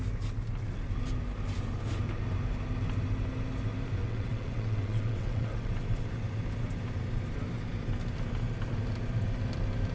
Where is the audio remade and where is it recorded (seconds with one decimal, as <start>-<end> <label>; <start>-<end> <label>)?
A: 0.0-4.0 recorded; 4.0-5.7 remade; 5.7-9.9 recorded